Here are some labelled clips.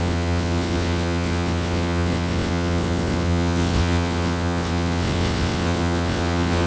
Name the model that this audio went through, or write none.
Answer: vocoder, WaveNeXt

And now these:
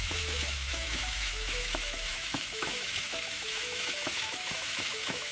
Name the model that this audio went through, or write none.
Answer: autoencoder, DAC-VAE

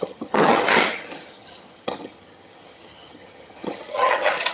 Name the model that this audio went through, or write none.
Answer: vocoder, HiFi-GAN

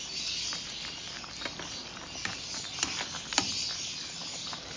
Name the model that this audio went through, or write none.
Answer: none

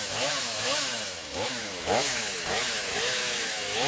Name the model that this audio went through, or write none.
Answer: autoencoder, DAC-VAE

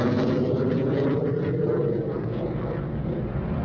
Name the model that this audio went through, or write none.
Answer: none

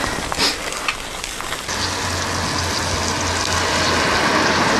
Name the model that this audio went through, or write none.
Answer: none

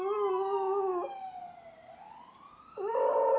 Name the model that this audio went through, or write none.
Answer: none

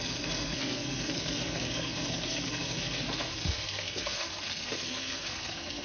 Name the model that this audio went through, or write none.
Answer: codec, SNAC